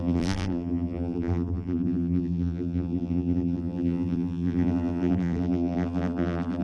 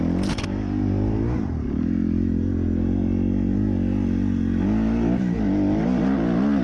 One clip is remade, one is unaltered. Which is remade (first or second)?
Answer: first